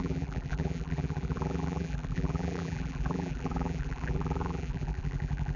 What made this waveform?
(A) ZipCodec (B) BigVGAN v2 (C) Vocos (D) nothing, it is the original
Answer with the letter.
B